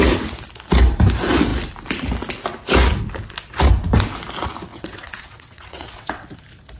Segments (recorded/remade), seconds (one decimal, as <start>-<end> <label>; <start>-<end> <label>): 0.0-4.7 recorded; 4.7-6.3 remade; 6.3-6.8 recorded